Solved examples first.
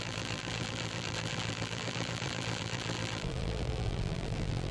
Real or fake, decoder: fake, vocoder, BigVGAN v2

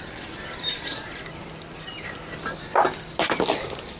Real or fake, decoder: real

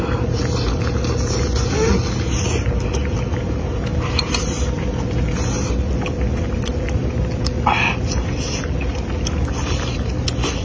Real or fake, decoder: real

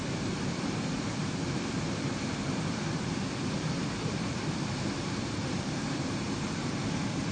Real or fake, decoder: fake, vocoder, BigVGAN v2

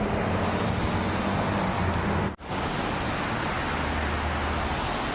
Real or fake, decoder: real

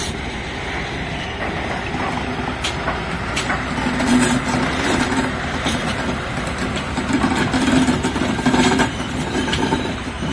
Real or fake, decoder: fake, vocoder, BigVGAN v2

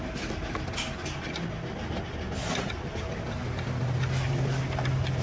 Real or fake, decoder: real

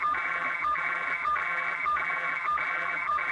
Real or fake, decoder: fake, vocoder, BigVGAN v2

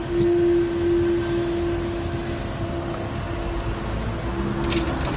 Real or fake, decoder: real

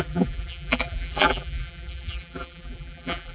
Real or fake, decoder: fake, vocoder, BigVGAN v2